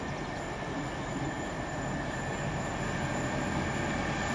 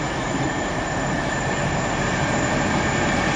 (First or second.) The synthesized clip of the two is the second